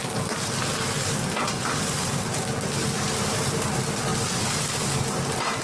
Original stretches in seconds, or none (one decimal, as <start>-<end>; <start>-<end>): 0.0-5.6